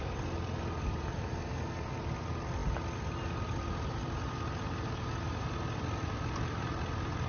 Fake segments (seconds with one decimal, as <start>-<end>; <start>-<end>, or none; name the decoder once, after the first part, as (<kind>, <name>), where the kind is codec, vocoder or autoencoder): 0.0-1.5 (vocoder, BigVGAN v2)